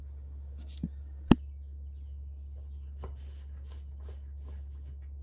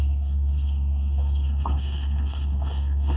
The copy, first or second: second